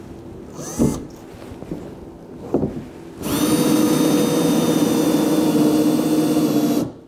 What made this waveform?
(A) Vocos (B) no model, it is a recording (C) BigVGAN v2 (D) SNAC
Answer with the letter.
B